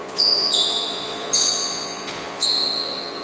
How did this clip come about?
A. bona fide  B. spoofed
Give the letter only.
B